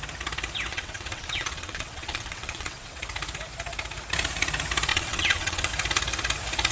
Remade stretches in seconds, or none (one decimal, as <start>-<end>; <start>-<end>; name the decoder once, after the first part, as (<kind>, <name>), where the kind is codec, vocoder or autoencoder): 0.7-3.0 (vocoder, WaveNeXt); 4.9-5.7